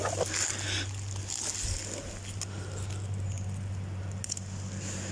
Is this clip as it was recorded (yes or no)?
yes